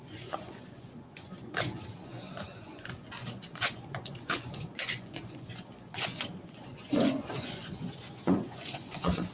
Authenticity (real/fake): fake